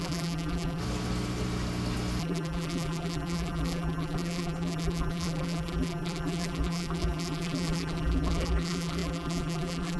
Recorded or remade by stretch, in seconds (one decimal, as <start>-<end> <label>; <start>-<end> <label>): 0.0-0.8 remade; 0.8-2.2 recorded; 2.2-10.0 remade